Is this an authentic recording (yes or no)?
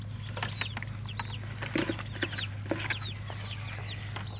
yes